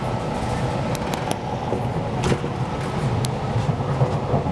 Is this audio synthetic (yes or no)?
no